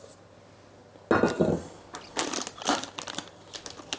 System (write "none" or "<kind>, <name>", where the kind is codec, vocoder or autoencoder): none